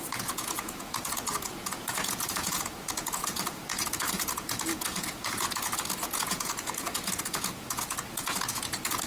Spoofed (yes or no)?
yes